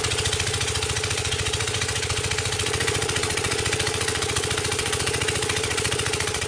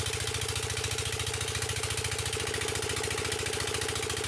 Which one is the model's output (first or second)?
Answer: first